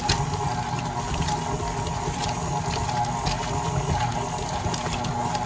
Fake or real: real